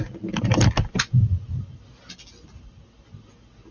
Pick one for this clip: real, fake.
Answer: real